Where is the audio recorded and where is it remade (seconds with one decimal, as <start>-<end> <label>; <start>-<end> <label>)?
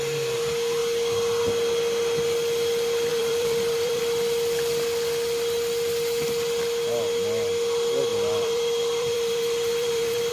0.0-3.1 recorded; 3.1-4.0 remade; 4.0-8.1 recorded; 8.1-10.3 remade